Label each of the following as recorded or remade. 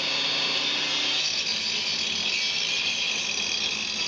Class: recorded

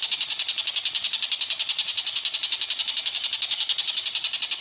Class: recorded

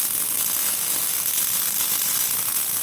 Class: recorded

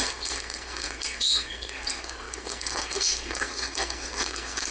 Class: remade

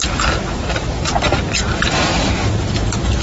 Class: remade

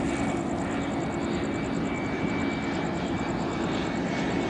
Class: recorded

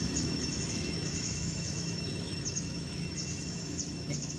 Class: remade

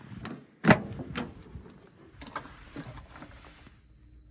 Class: recorded